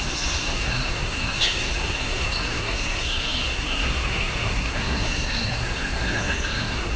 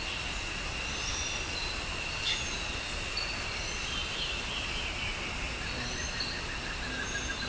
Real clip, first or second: second